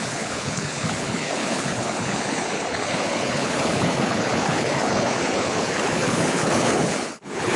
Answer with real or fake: fake